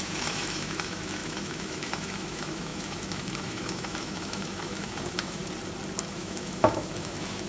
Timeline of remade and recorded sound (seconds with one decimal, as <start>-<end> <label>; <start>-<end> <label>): 0.0-5.4 remade; 5.4-6.1 recorded; 6.1-7.5 remade